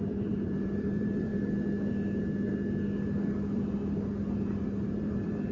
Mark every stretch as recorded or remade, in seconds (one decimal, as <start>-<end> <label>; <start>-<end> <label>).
0.0-1.3 remade; 1.3-4.6 recorded; 4.6-5.5 remade